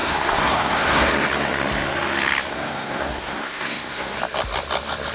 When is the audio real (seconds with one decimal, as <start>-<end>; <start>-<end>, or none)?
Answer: 1.1-2.5; 4.2-5.1